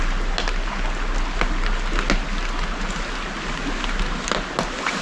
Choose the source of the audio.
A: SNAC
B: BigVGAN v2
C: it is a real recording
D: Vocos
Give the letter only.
C